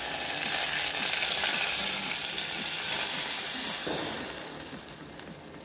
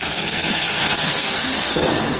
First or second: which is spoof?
second